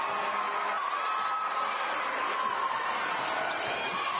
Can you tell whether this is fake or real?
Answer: real